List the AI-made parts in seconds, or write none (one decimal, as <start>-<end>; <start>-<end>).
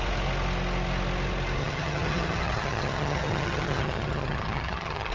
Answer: 1.6-5.1